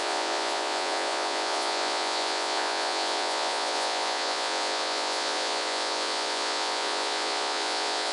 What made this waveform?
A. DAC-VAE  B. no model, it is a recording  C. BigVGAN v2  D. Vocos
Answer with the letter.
D